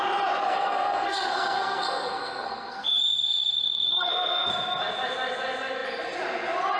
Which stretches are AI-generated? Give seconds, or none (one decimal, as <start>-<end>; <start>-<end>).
0.4-4.5